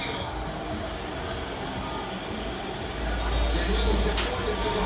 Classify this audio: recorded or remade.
recorded